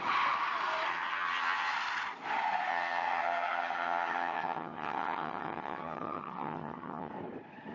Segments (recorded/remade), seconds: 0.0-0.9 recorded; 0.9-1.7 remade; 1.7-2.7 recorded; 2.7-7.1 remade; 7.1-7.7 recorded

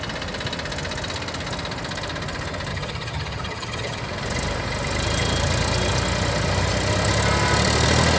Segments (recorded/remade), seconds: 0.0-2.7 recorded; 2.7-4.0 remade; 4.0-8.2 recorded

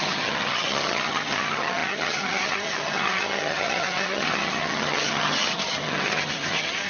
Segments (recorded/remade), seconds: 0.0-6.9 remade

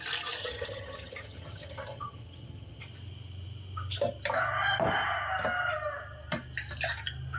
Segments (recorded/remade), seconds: 0.0-0.4 recorded; 0.4-2.8 remade; 2.8-7.4 recorded

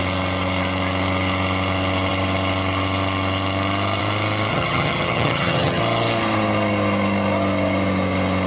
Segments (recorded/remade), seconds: 0.0-4.5 recorded; 4.5-5.8 remade; 5.8-8.5 recorded

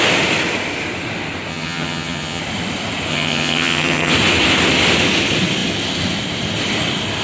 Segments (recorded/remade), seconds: 0.0-1.5 recorded; 1.5-2.4 remade; 2.4-3.1 recorded; 3.1-4.1 remade; 4.1-7.2 recorded

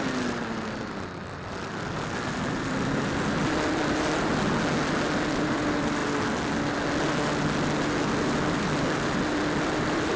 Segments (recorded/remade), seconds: 0.0-10.2 recorded